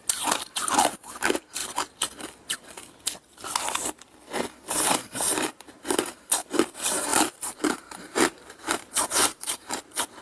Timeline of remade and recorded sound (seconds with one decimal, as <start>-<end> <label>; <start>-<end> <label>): 0.0-1.6 remade; 1.6-4.8 recorded; 4.8-10.2 remade